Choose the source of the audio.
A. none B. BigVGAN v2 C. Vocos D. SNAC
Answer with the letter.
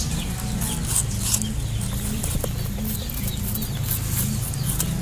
A